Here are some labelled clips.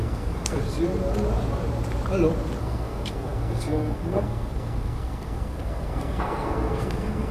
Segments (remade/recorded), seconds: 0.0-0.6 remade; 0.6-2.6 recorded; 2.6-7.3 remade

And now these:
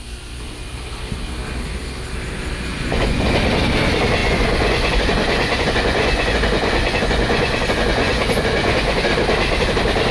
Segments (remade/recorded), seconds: 0.0-2.7 recorded; 2.7-3.4 remade; 3.4-4.2 recorded; 4.2-9.1 remade; 9.1-10.1 recorded

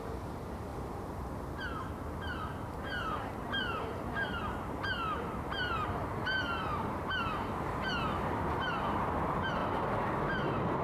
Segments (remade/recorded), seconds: 0.0-0.7 remade; 0.7-1.6 recorded; 1.6-10.8 remade

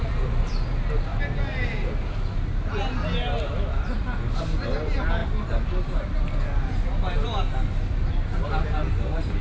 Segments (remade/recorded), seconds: 0.0-9.4 recorded

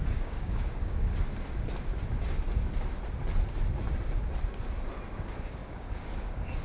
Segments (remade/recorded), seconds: 0.0-1.1 remade; 1.1-5.1 recorded; 5.1-6.6 remade